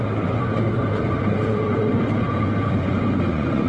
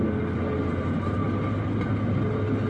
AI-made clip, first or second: first